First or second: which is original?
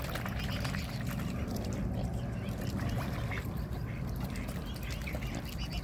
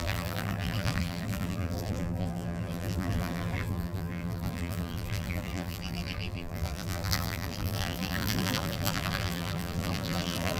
first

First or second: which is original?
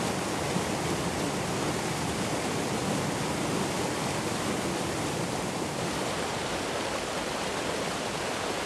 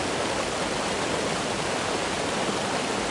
second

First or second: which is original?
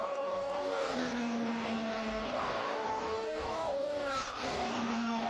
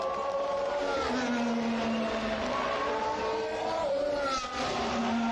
second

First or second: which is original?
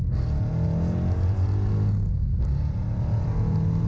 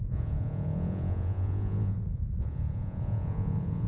first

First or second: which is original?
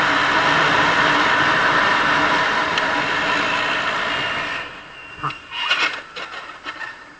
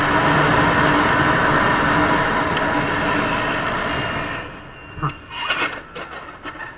second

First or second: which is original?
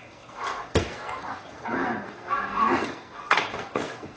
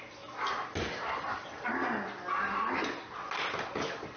second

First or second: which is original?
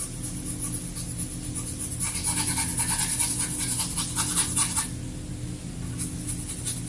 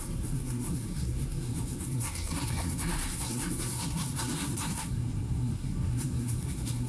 first